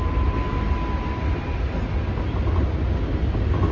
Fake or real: real